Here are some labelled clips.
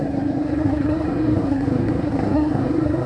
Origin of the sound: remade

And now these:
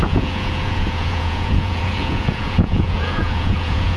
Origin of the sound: remade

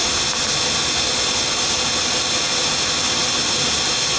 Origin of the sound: recorded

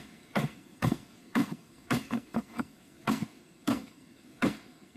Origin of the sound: remade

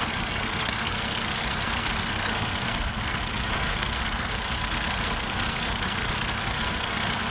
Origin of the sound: remade